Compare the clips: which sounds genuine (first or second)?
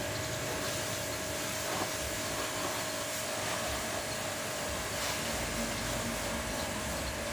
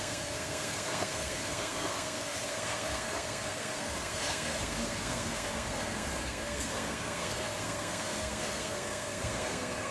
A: first